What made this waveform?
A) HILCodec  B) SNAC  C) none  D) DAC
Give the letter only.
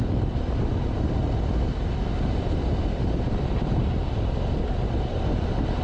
C